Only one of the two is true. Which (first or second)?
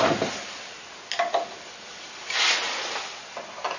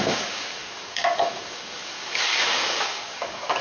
first